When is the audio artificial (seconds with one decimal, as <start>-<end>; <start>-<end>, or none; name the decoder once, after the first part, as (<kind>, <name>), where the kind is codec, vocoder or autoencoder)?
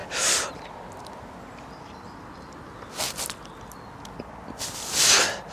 none